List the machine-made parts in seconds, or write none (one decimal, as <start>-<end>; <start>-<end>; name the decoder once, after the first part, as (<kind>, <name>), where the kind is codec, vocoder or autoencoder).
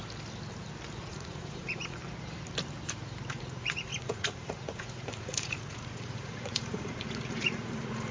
1.1-2.0 (vocoder, Vocos); 3.4-8.1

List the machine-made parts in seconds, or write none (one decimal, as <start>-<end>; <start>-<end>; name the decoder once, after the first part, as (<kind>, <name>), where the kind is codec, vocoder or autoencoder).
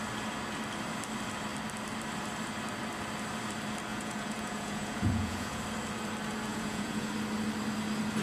3.9-5.6 (vocoder, Vocos); 6.5-7.1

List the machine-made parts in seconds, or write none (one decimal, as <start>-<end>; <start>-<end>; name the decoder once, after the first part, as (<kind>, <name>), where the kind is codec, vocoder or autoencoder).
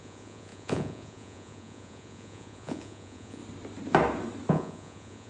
0.0-3.4 (vocoder, Vocos); 4.5-5.3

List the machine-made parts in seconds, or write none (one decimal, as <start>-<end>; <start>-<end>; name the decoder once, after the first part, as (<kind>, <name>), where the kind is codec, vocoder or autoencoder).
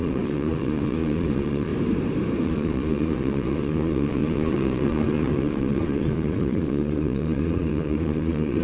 0.0-1.7 (vocoder, Vocos); 2.4-8.6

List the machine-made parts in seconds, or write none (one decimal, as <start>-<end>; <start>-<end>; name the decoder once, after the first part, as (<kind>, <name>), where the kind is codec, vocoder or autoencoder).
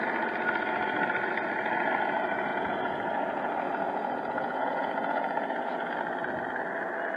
2.5-6.0 (vocoder, Vocos)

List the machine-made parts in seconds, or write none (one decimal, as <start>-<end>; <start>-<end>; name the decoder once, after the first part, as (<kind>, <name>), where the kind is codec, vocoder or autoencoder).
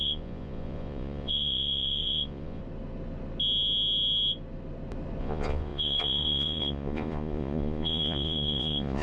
0.0-2.6 (vocoder, Vocos); 5.2-9.0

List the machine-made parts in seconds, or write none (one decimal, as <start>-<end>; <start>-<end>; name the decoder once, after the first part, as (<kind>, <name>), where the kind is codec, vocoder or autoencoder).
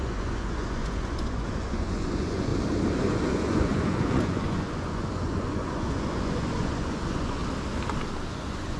0.0-2.5 (vocoder, Vocos); 3.0-7.4; 8.3-8.8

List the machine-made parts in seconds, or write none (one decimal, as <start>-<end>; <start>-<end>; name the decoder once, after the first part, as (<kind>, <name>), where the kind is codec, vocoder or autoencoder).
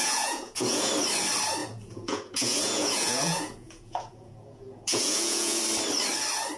0.0-0.9 (vocoder, Vocos); 1.6-5.6